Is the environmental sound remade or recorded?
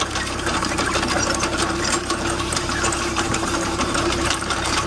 remade